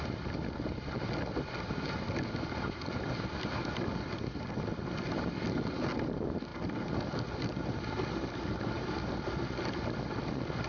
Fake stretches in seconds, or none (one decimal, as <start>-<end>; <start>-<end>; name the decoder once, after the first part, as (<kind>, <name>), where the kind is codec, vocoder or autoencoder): none